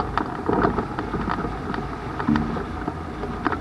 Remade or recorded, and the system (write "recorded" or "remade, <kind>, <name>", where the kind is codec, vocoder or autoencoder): recorded